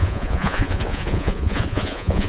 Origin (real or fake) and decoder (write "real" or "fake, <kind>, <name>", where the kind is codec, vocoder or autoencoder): fake, vocoder, Vocos